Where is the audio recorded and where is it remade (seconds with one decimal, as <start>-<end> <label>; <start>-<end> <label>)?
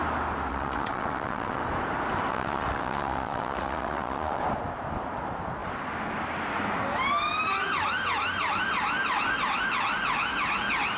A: 0.0-0.5 recorded; 0.5-1.6 remade; 1.6-2.3 recorded; 2.3-4.4 remade; 4.4-11.0 recorded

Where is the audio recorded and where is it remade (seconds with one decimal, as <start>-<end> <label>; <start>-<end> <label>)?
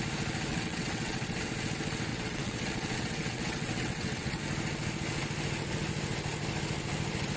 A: 0.0-0.5 recorded; 0.5-1.5 remade; 1.5-2.1 recorded; 2.1-4.4 remade; 4.4-7.4 recorded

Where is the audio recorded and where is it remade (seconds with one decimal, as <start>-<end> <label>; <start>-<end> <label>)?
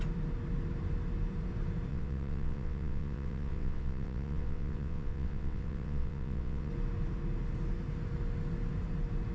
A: 0.0-1.9 recorded; 1.9-6.7 remade; 6.7-9.3 recorded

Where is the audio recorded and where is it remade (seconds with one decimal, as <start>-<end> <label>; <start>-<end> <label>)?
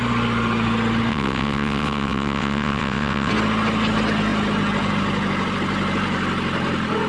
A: 0.0-1.1 recorded; 1.1-3.3 remade; 3.3-7.1 recorded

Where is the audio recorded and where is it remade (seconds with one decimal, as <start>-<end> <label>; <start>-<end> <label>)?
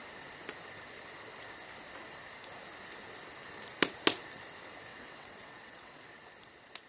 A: 0.0-4.9 recorded; 4.9-6.0 remade; 6.0-6.9 recorded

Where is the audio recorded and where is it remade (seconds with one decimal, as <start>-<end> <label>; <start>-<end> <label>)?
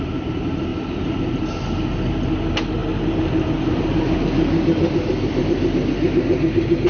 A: 0.0-6.9 recorded